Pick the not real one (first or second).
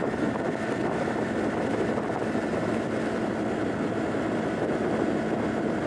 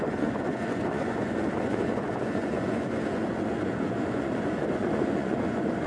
second